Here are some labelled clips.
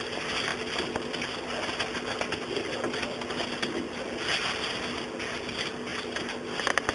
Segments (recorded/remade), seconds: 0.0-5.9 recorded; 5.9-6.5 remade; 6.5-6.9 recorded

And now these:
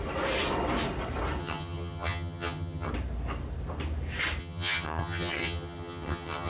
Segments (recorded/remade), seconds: 0.0-1.4 recorded; 1.4-2.9 remade; 2.9-4.4 recorded; 4.4-6.5 remade

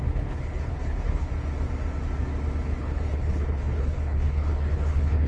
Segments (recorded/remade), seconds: 0.0-1.3 remade; 1.3-2.8 recorded; 2.8-5.3 remade

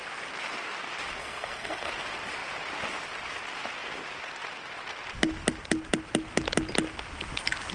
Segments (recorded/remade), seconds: 0.0-1.2 recorded; 1.2-1.9 remade; 1.9-7.7 recorded

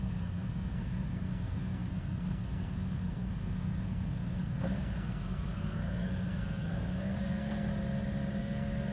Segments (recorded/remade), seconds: 0.0-7.7 remade; 7.7-8.4 recorded; 8.4-8.9 remade